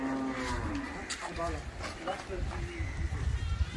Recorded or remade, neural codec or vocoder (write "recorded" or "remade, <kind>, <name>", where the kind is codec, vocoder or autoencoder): recorded